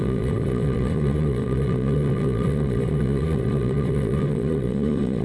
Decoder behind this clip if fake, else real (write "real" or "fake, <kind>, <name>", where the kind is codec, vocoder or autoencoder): fake, vocoder, Vocos